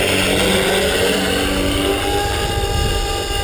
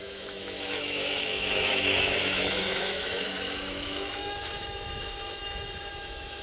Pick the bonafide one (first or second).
first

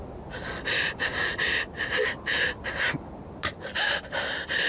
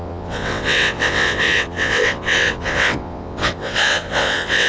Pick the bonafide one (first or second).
first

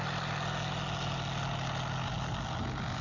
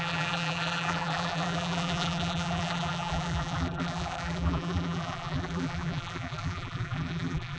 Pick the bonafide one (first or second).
first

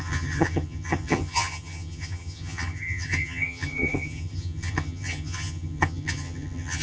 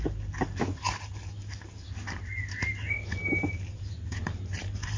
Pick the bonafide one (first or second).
second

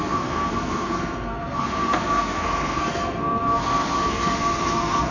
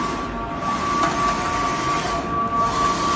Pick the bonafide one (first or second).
second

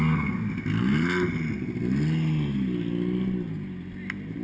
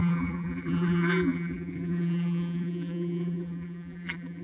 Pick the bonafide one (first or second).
first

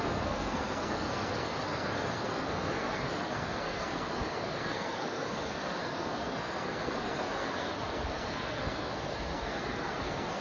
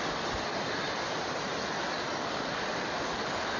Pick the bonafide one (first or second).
second